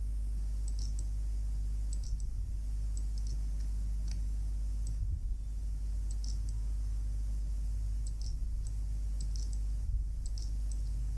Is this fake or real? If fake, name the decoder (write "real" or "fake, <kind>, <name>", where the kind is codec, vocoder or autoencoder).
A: real